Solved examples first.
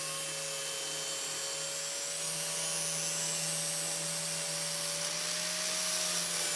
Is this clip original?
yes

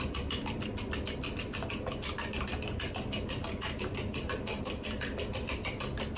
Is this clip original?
yes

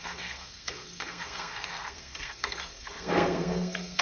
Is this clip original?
no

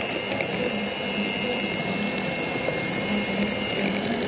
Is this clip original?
yes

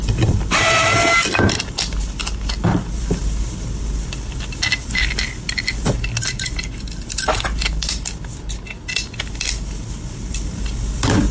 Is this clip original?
yes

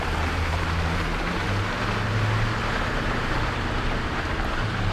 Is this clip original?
no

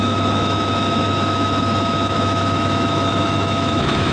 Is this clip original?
no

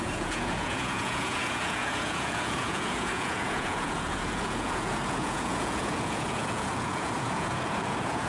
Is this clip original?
no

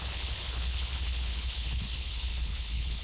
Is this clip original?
no